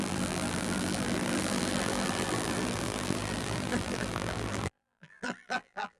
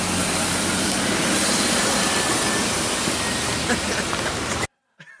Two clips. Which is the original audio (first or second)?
second